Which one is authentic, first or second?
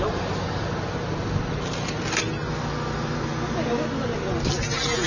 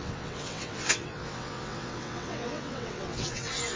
first